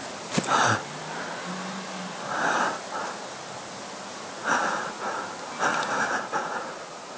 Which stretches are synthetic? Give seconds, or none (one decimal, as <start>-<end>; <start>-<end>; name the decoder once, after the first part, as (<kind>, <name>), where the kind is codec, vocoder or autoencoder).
4.4-5.2 (vocoder, Vocos); 5.7-7.2